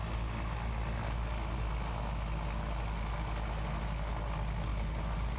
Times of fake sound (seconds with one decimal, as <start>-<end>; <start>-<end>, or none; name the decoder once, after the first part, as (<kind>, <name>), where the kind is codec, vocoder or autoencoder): 4.7-5.4 (vocoder, BigVGAN v2)